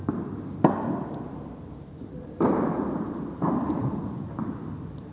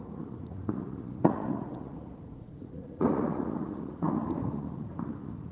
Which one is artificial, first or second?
second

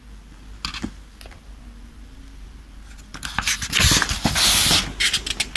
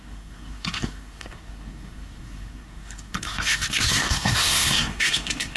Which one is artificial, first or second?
second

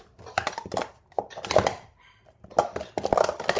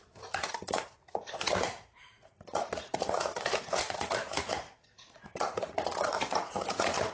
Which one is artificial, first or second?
second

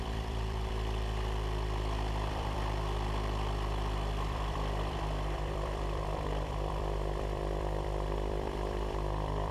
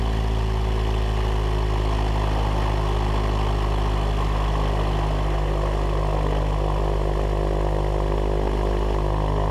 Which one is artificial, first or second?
first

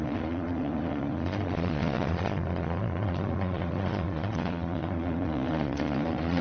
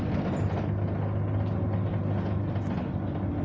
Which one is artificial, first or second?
first